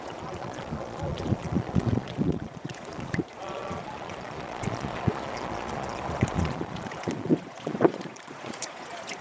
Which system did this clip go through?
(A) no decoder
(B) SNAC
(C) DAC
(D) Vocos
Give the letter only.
D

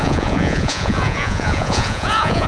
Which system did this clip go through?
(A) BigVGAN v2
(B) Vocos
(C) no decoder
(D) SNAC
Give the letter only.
B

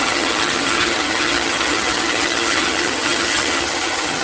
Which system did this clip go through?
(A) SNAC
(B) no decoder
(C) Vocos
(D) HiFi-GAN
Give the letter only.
D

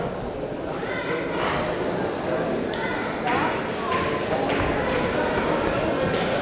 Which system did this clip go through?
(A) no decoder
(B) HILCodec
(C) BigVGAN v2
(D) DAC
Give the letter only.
A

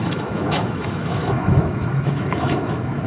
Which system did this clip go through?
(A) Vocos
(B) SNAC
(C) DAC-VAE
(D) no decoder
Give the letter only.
C